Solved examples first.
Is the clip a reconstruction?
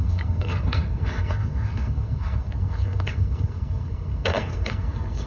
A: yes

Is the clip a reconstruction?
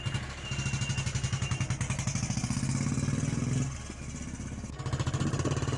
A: no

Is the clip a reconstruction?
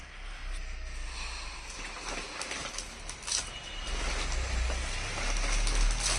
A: no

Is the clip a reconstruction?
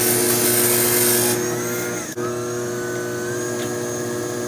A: no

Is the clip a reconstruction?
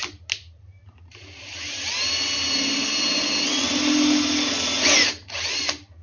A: no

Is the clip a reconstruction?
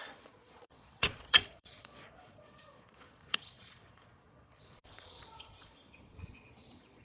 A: yes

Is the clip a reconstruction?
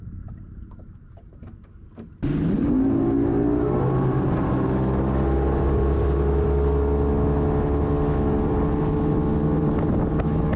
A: no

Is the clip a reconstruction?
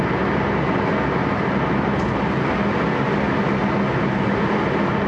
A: no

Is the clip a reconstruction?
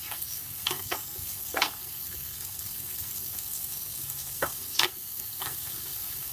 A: yes